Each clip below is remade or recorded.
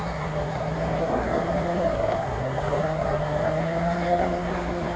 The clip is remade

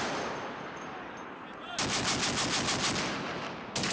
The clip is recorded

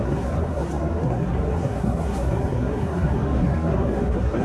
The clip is remade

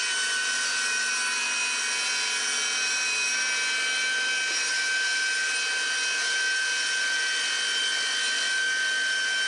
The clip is recorded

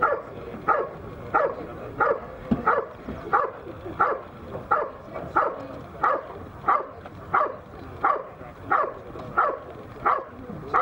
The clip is recorded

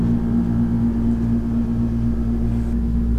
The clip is recorded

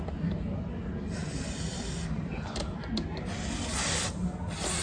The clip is recorded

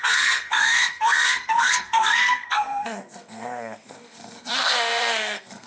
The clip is remade